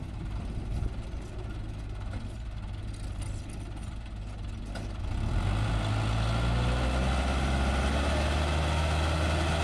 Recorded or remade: recorded